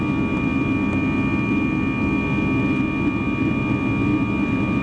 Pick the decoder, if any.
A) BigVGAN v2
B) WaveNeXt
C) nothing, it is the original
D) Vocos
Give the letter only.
C